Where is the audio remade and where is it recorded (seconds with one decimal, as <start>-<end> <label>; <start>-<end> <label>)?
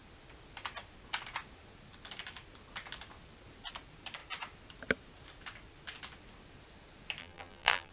0.0-7.2 recorded; 7.2-7.9 remade